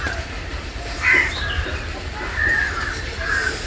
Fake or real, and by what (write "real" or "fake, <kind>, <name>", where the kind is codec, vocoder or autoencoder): fake, vocoder, BigVGAN v2